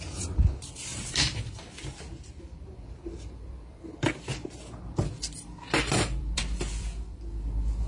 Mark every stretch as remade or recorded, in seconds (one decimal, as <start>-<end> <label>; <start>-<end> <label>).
0.0-4.3 remade; 4.3-4.8 recorded; 4.8-7.9 remade